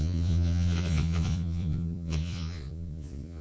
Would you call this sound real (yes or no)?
no